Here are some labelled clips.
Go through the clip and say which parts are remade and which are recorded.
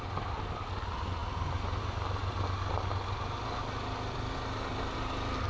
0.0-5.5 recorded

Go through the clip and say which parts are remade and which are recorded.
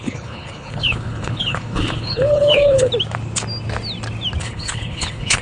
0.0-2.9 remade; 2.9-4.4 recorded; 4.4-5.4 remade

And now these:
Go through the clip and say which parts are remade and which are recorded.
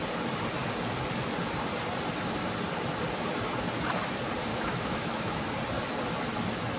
0.0-4.5 recorded; 4.5-5.4 remade; 5.4-6.8 recorded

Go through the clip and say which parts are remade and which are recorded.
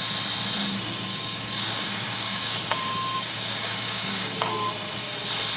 0.0-1.1 recorded; 1.1-4.5 remade; 4.5-5.6 recorded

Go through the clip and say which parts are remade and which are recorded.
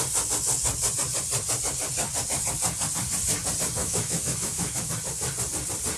0.0-3.8 recorded; 3.8-4.9 remade; 4.9-6.0 recorded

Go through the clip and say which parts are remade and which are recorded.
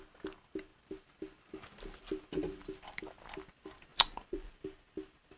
0.0-3.9 recorded; 3.9-4.5 remade; 4.5-5.4 recorded